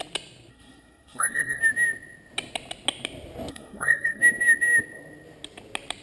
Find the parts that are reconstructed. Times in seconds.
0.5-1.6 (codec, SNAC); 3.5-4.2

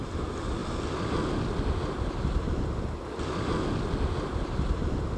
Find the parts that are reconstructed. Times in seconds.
none

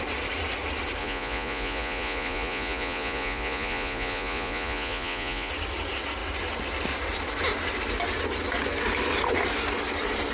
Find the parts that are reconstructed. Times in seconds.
1.0-5.5 (vocoder, Vocos)